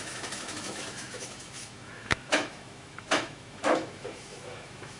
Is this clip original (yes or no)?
no